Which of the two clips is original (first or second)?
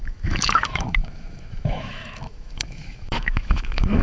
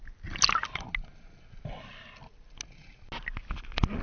second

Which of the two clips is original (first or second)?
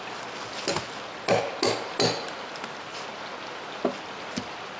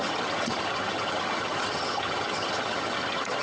first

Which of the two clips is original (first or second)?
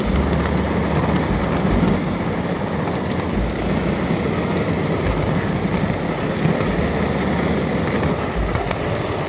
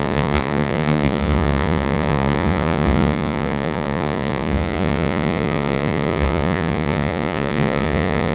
first